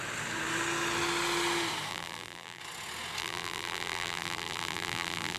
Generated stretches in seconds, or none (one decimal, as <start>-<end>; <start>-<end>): 1.9-2.6; 3.2-5.4